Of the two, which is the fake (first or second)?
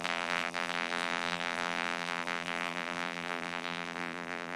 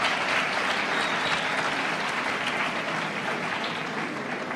first